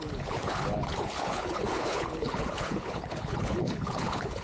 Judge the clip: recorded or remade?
remade